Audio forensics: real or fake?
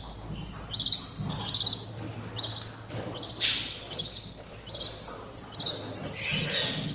real